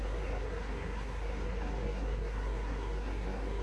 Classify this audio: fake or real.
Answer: fake